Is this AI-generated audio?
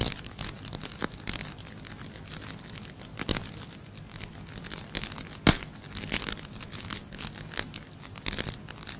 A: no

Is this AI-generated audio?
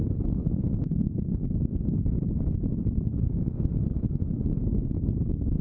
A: yes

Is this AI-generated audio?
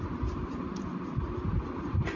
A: no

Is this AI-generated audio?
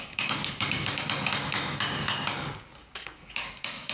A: yes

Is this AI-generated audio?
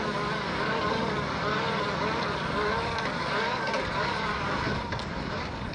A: yes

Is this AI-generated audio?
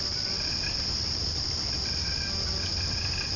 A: no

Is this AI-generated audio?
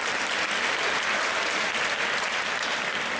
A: no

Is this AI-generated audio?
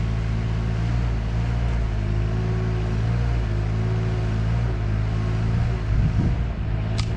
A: no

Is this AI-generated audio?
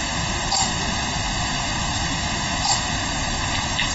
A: no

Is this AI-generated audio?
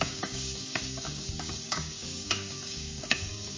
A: yes